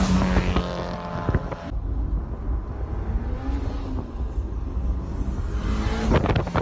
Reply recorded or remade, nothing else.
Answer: recorded